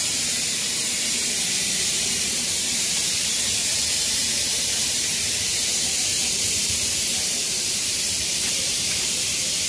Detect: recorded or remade remade